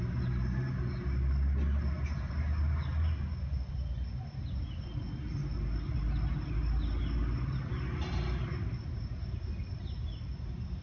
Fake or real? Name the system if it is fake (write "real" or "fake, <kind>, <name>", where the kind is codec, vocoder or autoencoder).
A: real